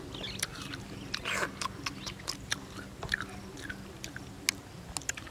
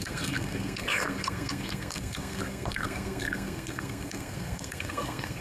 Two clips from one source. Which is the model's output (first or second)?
second